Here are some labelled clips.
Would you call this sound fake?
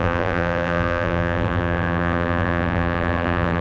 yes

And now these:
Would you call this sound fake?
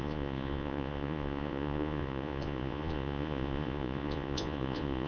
yes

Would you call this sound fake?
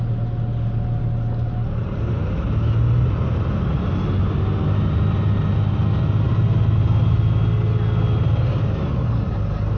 no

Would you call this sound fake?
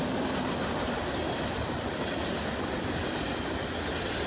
no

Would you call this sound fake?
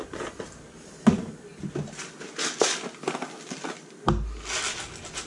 no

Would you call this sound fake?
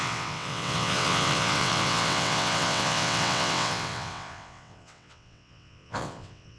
yes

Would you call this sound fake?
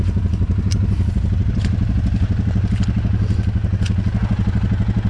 no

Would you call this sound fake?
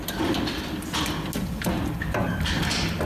no